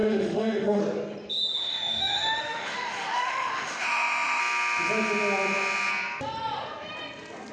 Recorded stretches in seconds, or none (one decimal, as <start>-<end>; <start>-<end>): 0.8-1.6; 4.4-7.5